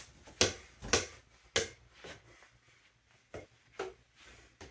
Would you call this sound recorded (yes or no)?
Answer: yes